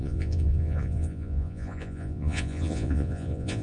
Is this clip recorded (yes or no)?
no